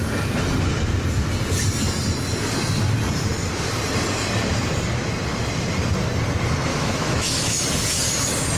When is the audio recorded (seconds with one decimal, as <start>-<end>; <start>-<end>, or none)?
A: 0.0-6.7; 7.6-8.6